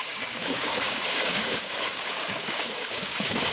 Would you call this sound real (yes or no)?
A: no